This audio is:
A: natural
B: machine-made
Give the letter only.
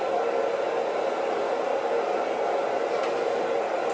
A